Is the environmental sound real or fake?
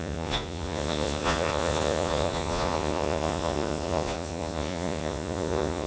fake